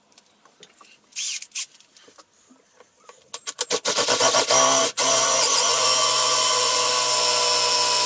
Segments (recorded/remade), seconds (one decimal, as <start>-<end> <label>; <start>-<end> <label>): 0.0-4.8 recorded; 4.8-6.9 remade; 6.9-8.1 recorded